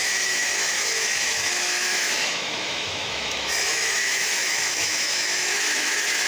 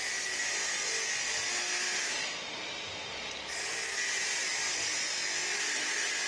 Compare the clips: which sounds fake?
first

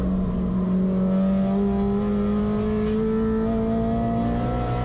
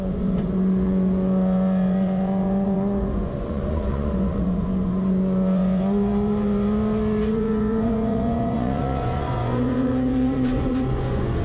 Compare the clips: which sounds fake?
second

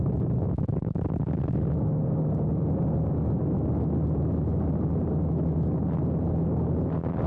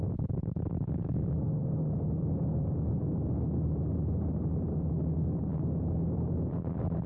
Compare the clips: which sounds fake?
second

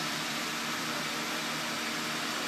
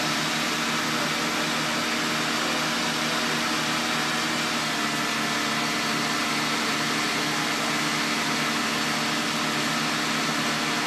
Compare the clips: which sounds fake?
first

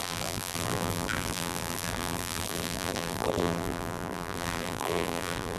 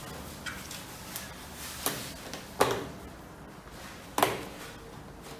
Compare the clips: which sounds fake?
first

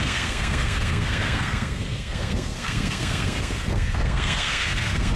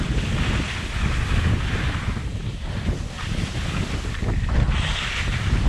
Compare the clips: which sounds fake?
first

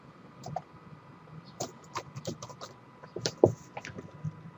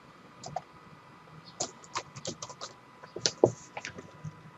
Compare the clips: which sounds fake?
first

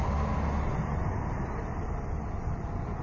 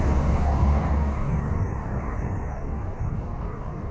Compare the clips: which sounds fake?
second